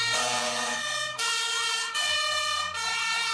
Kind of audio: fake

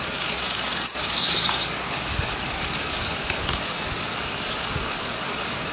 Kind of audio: fake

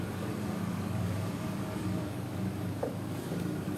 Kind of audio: fake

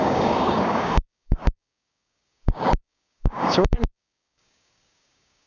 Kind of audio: fake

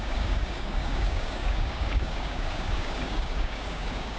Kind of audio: fake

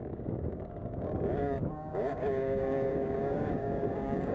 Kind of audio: fake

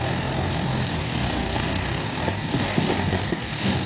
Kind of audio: fake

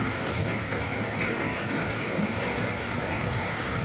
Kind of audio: fake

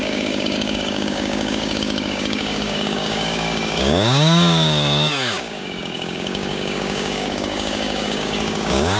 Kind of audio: fake